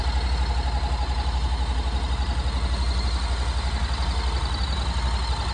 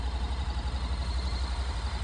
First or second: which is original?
first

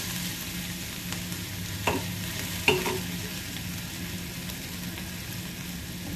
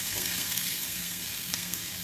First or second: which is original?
first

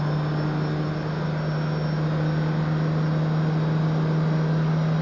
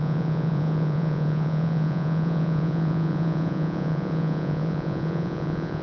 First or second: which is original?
first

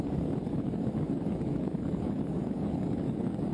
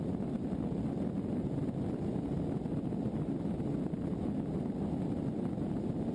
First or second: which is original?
second